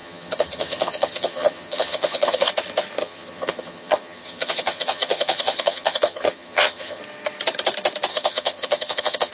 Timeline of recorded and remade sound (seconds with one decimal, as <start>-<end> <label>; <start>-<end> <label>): 0.0-2.5 remade; 2.5-3.0 recorded; 3.0-7.0 remade; 7.0-8.1 recorded; 8.1-9.3 remade